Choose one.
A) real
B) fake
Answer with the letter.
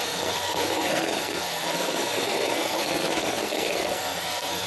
B